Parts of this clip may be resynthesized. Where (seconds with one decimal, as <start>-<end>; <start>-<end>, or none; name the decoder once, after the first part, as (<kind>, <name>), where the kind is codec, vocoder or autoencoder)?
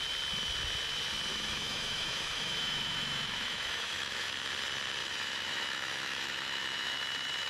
1.3-4.3 (autoencoder, DAC-VAE); 5.0-7.0